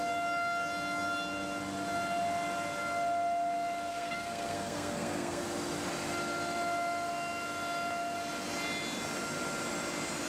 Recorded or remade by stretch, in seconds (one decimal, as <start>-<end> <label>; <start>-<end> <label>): 0.0-3.9 recorded; 3.9-5.4 remade; 5.4-10.3 recorded